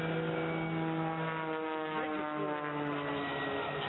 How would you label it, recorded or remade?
recorded